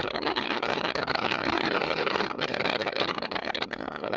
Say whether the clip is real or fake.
fake